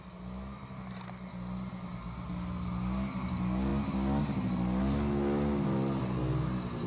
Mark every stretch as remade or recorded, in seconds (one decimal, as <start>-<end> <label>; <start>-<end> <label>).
0.0-6.9 recorded